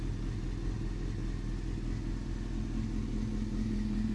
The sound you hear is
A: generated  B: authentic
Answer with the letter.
B